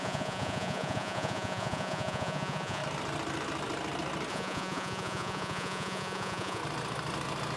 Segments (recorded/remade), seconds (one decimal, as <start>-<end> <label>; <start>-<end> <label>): 0.0-2.8 remade; 2.8-4.3 recorded; 4.3-6.6 remade; 6.6-7.6 recorded